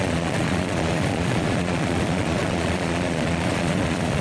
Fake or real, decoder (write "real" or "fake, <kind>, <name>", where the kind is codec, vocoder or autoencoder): fake, vocoder, Vocos